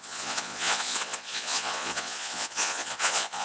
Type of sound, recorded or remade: remade